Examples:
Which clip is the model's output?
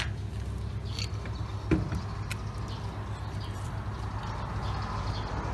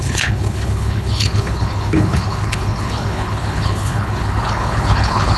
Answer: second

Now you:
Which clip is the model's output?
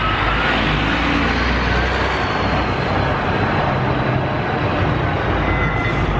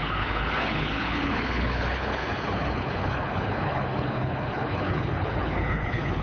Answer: second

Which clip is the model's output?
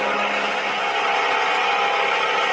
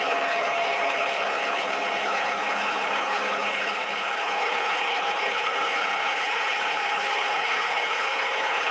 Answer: second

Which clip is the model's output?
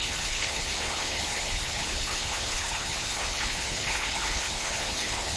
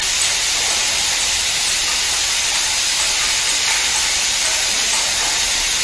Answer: first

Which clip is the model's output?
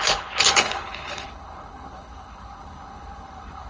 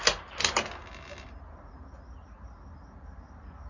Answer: first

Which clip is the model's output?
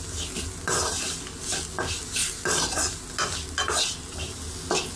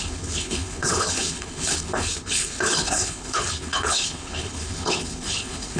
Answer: second